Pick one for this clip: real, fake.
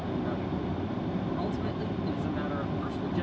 real